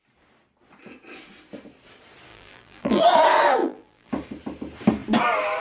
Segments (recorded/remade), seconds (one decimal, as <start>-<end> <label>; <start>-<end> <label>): 0.0-2.3 recorded; 2.3-3.0 remade; 3.0-3.6 recorded; 3.6-4.1 remade; 4.1-5.6 recorded